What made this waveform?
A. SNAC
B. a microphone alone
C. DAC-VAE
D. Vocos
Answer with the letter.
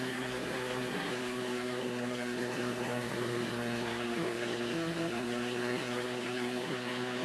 A